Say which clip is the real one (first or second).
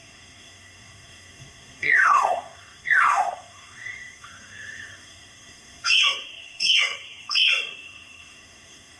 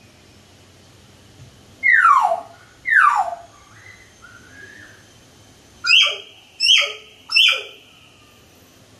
second